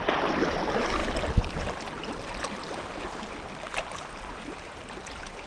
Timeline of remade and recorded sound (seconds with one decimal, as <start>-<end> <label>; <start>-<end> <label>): 0.0-5.5 recorded